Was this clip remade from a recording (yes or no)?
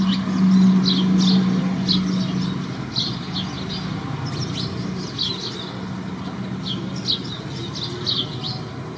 no